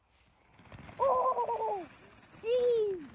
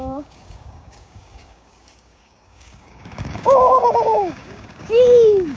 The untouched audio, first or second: first